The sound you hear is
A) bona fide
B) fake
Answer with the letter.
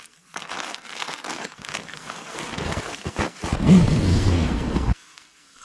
B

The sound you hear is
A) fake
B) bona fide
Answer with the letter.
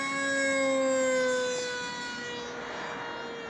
B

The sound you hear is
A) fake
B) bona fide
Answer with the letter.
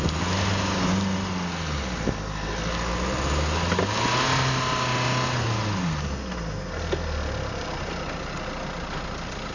B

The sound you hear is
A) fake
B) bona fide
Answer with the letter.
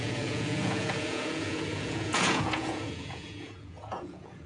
A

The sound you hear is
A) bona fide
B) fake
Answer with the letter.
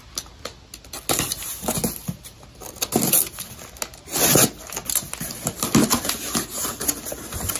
A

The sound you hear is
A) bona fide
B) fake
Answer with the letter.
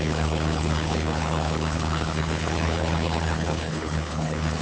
B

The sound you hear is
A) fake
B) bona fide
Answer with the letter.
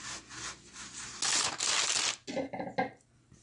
B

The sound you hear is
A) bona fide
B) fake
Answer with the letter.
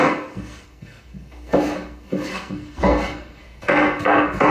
B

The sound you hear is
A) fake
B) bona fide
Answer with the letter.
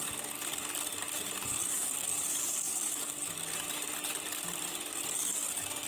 B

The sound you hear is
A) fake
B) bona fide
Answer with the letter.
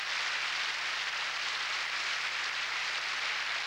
B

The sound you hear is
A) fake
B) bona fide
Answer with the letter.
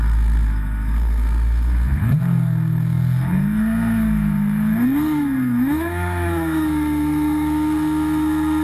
A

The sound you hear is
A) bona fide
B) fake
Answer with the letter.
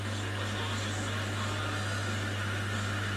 A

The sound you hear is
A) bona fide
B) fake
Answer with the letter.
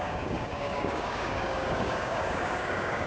B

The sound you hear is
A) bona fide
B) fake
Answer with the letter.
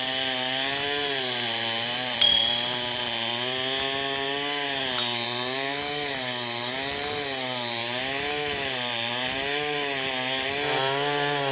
A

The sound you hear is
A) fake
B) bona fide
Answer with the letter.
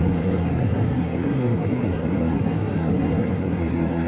A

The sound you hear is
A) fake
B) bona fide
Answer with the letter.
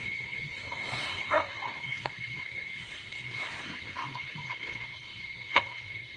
A